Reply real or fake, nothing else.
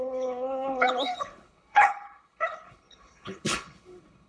fake